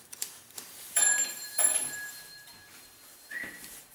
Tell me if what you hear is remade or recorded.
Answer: remade